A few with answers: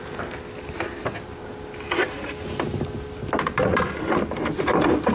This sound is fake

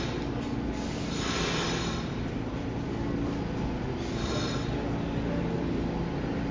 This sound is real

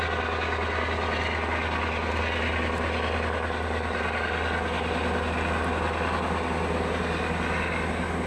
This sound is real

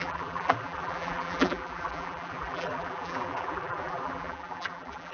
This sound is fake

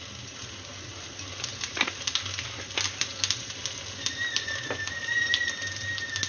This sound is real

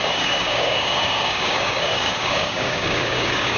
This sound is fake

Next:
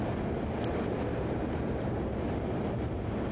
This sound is real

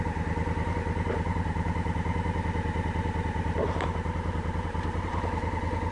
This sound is real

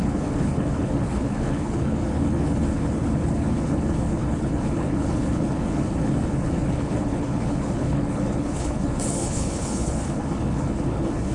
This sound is fake